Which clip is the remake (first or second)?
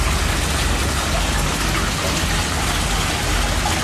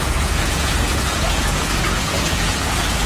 second